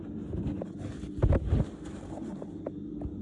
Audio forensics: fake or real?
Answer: real